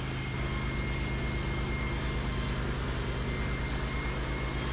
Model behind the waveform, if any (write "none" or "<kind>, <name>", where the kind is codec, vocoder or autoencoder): none